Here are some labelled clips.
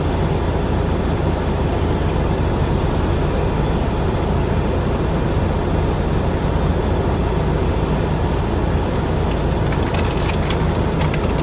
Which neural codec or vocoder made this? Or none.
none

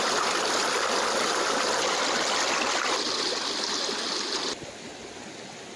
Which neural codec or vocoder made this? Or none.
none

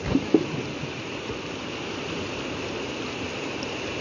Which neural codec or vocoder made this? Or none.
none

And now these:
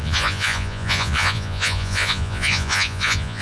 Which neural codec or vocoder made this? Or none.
vocoder, Vocos